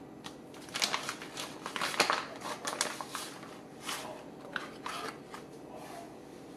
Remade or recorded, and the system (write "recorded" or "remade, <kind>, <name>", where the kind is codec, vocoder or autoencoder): recorded